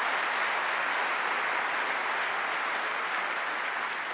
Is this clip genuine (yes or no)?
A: yes